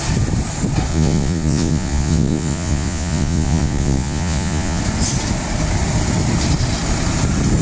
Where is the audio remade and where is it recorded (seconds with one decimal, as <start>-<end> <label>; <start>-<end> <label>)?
0.0-0.9 recorded; 0.9-4.8 remade; 4.8-7.6 recorded